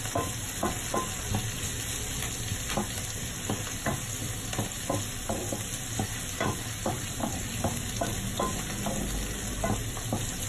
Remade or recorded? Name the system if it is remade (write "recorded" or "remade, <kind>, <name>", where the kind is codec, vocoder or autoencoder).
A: recorded